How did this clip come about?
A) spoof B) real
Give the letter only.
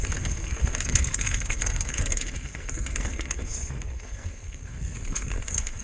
A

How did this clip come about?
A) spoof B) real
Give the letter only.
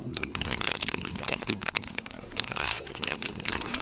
A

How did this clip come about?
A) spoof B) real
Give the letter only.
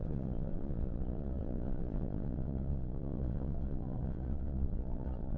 A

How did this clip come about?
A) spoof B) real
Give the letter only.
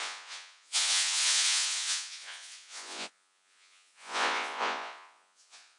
A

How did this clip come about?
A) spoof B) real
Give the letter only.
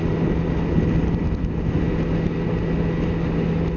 B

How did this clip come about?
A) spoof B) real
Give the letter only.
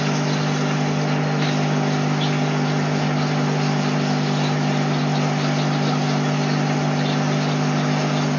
B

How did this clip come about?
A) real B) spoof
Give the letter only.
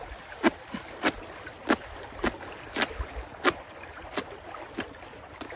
A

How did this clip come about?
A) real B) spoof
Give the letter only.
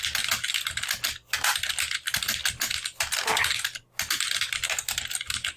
A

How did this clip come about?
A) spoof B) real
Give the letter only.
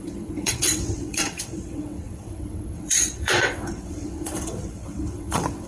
A